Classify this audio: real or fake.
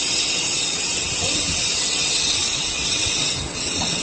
fake